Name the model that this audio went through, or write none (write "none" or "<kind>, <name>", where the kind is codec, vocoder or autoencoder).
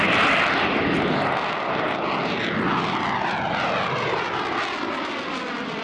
none